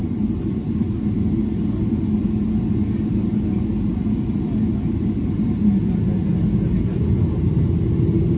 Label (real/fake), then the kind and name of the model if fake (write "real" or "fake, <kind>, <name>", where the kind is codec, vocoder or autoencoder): real